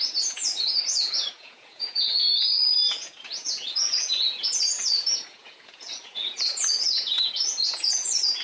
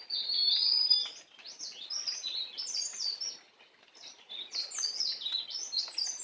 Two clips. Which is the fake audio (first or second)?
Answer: first